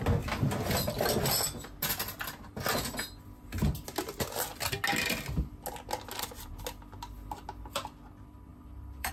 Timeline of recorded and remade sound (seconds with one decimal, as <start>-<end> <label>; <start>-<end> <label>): 0.0-8.5 recorded; 8.5-9.1 remade

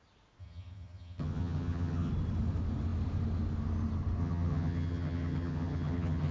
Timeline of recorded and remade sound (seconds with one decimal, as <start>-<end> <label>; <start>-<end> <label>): 0.0-0.4 recorded; 0.4-2.1 remade; 2.1-4.2 recorded; 4.2-6.3 remade

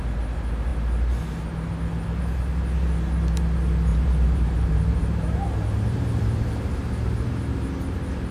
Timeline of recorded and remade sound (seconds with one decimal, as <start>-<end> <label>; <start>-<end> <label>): 0.0-3.9 recorded; 3.9-7.7 remade; 7.7-8.3 recorded

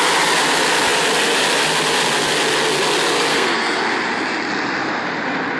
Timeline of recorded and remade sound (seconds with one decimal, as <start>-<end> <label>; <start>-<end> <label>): 0.0-3.3 recorded; 3.3-3.8 remade; 3.8-5.6 recorded

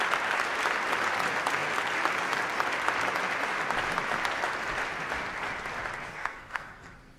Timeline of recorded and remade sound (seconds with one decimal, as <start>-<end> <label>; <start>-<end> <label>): 0.0-6.1 recorded; 6.1-7.2 remade

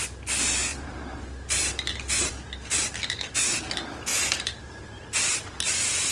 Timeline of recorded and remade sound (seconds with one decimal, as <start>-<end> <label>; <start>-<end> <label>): 0.0-0.7 recorded; 0.7-1.2 remade; 1.2-4.1 recorded; 4.1-4.8 remade; 4.8-6.1 recorded